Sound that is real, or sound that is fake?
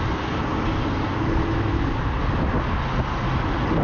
real